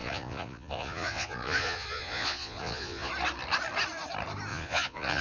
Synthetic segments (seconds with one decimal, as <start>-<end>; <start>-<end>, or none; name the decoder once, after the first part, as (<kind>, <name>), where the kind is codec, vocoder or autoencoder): 0.0-3.1 (vocoder, Vocos); 4.5-5.2